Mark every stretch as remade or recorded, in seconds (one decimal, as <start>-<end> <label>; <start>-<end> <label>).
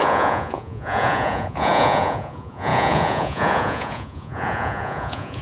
0.0-5.4 remade